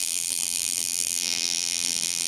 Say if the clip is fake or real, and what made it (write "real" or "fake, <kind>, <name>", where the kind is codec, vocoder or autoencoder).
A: fake, vocoder, BigVGAN v2